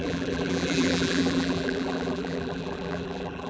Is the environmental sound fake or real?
fake